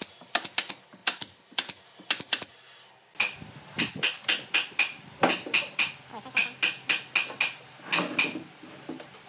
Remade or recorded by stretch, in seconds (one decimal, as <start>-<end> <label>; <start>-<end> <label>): 0.0-9.3 recorded